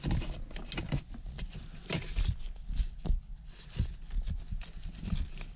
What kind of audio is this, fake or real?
real